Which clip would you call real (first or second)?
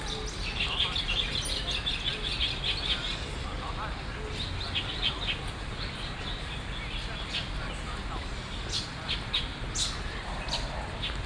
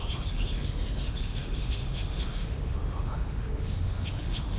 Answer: first